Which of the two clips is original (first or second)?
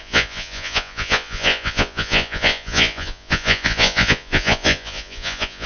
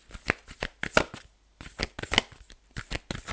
second